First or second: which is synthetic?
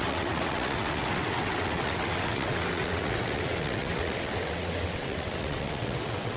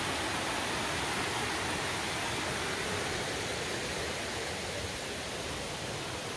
first